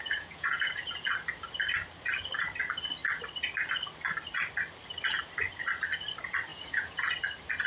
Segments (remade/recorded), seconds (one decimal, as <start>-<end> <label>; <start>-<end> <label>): 0.0-1.1 remade; 1.1-6.5 recorded; 6.5-7.0 remade; 7.0-7.7 recorded